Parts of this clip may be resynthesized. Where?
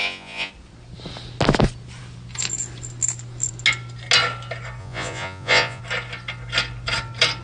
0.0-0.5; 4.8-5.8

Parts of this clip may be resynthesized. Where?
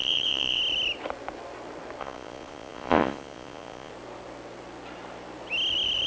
0.0-0.6; 2.0-3.9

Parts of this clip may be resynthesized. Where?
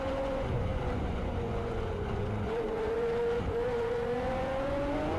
0.0-5.2